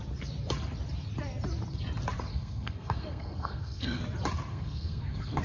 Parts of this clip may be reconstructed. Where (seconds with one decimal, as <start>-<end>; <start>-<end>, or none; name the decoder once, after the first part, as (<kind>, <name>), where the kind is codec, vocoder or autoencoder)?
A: 2.3-4.0 (codec, SNAC); 4.5-5.4

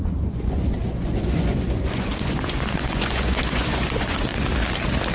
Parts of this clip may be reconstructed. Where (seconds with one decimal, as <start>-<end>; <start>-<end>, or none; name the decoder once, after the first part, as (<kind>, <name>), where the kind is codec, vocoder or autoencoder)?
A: 0.0-4.3 (vocoder, Vocos)

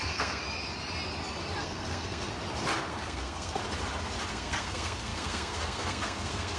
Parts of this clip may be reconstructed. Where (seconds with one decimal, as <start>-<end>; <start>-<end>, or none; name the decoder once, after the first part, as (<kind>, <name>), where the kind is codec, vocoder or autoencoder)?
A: 0.0-0.4 (codec, SNAC); 1.6-2.3; 2.9-3.6; 4.3-6.6

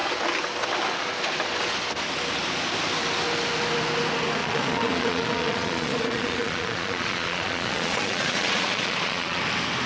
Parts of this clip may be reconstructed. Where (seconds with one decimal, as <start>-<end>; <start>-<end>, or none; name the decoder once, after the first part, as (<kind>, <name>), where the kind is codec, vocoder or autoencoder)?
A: 4.4-9.4 (vocoder, Vocos)